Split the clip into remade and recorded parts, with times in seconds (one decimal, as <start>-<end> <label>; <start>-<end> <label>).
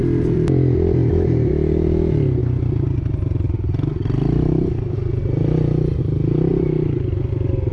0.0-1.0 recorded; 1.0-1.5 remade; 1.5-6.5 recorded; 6.5-7.2 remade; 7.2-7.7 recorded